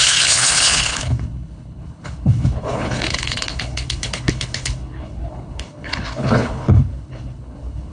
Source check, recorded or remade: remade